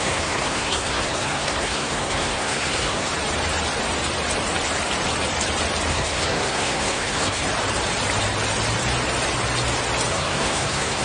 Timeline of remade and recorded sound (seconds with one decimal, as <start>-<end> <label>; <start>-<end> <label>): 0.0-3.1 remade; 3.1-5.9 recorded; 5.9-7.4 remade; 7.4-10.1 recorded; 10.1-11.0 remade